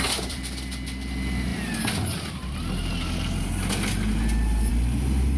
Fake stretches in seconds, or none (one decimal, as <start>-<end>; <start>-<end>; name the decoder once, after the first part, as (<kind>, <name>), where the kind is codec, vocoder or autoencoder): 0.0-1.5 (vocoder, BigVGAN v2); 4.7-5.4